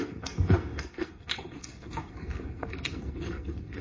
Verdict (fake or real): fake